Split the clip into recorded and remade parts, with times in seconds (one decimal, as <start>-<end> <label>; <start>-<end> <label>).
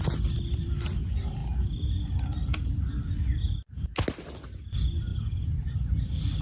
0.0-6.4 recorded